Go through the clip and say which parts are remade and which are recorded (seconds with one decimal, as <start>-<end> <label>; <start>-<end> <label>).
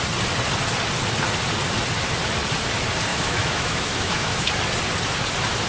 0.0-3.1 recorded; 3.1-4.5 remade; 4.5-5.7 recorded